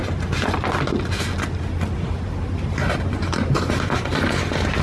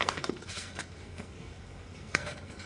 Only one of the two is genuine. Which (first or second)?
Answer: first